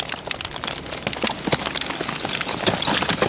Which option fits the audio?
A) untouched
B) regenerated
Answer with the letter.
A